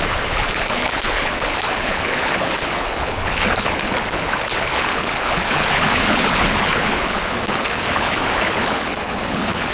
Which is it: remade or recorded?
remade